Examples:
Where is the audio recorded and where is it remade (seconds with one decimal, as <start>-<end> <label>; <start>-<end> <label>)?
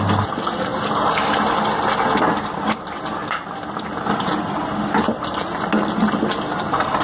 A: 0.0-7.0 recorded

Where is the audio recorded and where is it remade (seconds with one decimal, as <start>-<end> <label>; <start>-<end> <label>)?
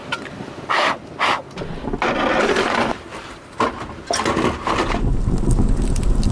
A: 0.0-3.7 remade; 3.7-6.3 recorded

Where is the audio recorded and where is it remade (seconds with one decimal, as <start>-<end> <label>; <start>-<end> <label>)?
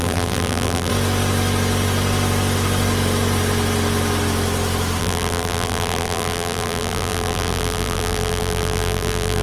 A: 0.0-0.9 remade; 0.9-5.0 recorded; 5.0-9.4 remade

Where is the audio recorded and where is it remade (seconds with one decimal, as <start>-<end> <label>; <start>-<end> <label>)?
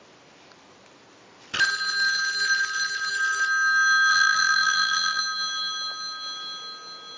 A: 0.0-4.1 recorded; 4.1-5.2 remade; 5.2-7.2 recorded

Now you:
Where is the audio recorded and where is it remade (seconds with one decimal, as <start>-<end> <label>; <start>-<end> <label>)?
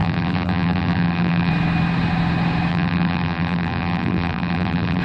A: 0.0-1.5 remade; 1.5-2.7 recorded; 2.7-5.0 remade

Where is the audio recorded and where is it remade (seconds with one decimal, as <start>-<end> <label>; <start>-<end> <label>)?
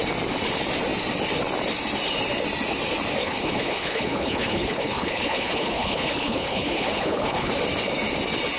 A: 0.0-3.2 recorded; 3.2-7.5 remade; 7.5-8.6 recorded